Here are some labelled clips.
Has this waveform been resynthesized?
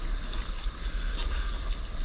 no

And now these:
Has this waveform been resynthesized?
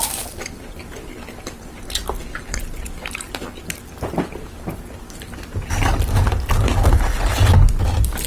no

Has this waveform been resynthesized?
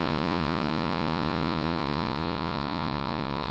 yes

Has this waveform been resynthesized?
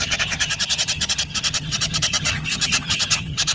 yes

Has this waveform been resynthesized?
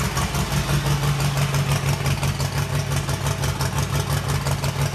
no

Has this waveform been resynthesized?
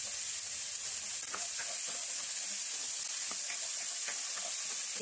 no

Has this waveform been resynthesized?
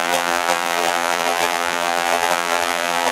yes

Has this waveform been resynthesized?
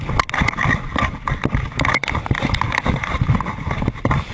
no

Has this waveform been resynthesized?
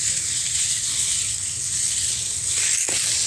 yes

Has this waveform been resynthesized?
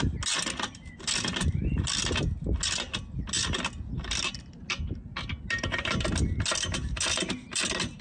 no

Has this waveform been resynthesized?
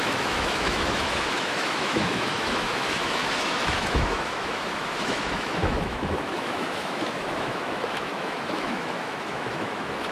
yes